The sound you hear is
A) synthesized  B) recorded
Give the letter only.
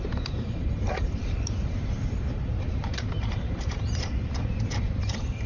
A